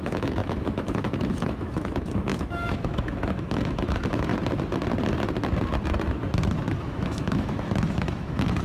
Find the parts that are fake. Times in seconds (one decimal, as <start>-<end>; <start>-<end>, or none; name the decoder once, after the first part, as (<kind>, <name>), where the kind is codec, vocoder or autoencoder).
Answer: 0.0-4.3 (autoencoder, DAC-VAE); 6.8-8.6

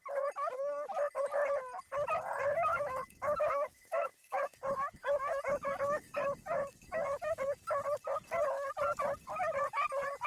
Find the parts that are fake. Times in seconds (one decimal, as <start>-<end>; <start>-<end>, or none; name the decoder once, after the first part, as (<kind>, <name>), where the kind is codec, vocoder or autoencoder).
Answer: 2.7-7.6 (autoencoder, DAC-VAE)

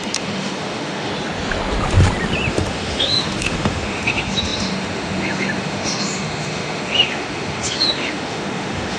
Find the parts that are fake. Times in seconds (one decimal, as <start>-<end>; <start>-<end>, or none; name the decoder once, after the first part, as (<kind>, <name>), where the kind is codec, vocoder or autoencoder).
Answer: 0.0-1.1 (autoencoder, DAC-VAE); 2.5-9.0

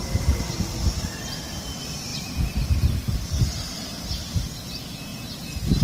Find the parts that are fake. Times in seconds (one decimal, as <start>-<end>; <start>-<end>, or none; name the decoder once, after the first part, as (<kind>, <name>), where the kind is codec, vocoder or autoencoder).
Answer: none

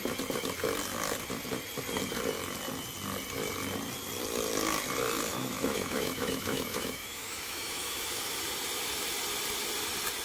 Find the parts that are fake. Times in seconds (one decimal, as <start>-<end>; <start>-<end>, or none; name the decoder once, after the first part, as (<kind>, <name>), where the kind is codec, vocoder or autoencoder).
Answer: 5.3-8.4 (autoencoder, DAC-VAE)

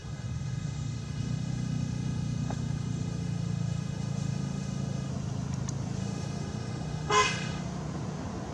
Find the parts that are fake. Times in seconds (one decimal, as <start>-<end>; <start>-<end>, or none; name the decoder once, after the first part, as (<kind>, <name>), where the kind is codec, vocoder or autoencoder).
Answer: 0.0-5.1 (autoencoder, DAC-VAE); 6.0-7.6

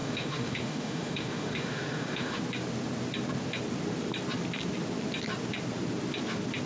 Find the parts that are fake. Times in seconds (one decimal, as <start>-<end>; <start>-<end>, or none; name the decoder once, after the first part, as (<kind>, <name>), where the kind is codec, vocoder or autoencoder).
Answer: 0.0-2.4 (autoencoder, DAC-VAE)

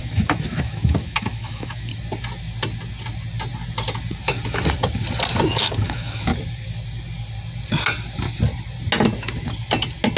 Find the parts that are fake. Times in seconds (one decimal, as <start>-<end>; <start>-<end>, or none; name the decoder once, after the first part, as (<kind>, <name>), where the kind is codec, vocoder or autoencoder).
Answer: 0.0-1.9 (autoencoder, DAC-VAE); 5.5-6.3